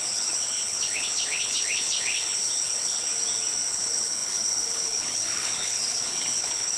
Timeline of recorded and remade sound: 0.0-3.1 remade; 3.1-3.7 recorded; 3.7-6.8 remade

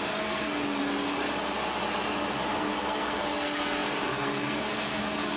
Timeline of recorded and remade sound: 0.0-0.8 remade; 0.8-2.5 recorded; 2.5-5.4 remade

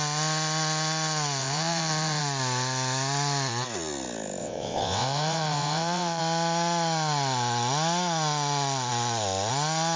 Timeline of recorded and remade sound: 0.0-1.4 recorded; 1.4-2.2 remade; 2.2-4.4 recorded; 4.4-6.2 remade; 6.2-10.0 recorded

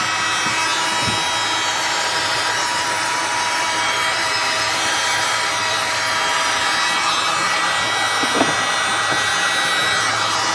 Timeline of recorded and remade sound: 0.0-1.7 recorded; 1.7-6.6 remade; 6.6-10.5 recorded

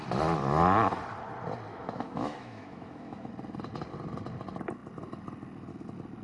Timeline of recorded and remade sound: 0.0-1.7 recorded; 1.7-3.3 remade; 3.3-6.2 recorded